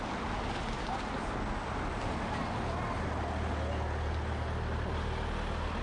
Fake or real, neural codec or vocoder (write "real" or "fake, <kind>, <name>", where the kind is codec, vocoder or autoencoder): real